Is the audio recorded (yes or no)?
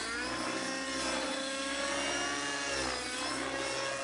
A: yes